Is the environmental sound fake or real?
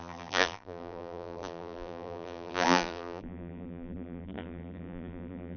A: fake